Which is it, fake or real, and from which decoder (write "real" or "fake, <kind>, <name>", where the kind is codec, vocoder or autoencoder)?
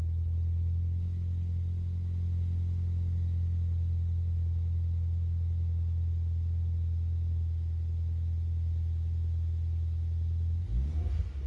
real